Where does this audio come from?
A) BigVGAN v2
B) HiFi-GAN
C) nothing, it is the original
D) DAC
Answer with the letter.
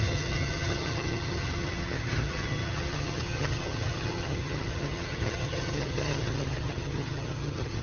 B